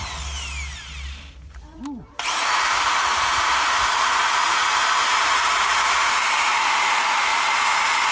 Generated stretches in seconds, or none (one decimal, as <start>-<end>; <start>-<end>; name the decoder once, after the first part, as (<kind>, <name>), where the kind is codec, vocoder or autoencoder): 5.2-6.5 (vocoder, BigVGAN v2)